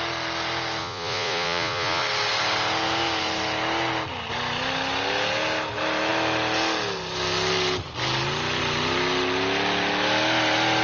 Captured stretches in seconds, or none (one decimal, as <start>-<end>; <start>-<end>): 0.0-0.8; 2.0-10.8

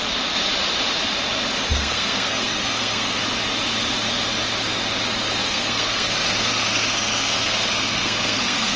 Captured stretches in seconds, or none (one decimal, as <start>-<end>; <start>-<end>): 0.0-1.7; 3.2-5.4

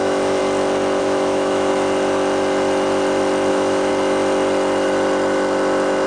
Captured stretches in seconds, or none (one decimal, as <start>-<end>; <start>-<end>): 0.4-1.0; 1.7-3.5; 3.9-6.1

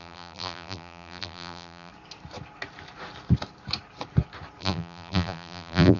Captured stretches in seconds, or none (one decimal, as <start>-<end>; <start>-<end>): 1.9-4.6

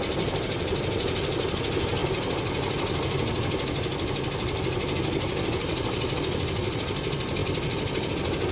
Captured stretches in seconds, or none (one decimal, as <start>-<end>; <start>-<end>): 0.0-8.5

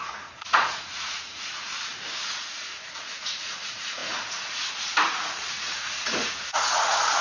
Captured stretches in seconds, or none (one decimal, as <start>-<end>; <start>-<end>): none

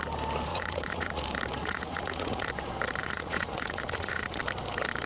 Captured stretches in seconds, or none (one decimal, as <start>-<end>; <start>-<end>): 0.0-0.5; 1.2-1.6; 2.5-3.0; 4.4-5.1

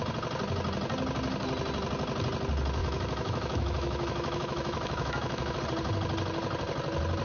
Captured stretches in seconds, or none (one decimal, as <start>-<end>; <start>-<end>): 0.0-2.8; 5.6-7.2